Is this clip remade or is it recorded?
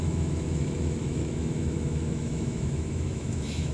remade